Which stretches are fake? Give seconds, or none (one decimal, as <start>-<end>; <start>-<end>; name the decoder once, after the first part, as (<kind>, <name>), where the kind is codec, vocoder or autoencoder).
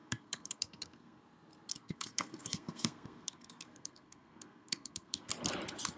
0.0-1.2 (codec, SNAC); 1.7-5.3